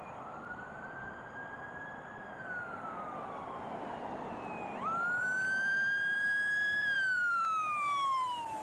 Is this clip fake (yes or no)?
yes